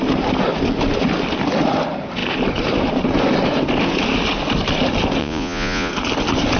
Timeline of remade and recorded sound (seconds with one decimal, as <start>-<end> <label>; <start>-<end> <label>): 0.0-5.2 recorded; 5.2-5.9 remade; 5.9-6.6 recorded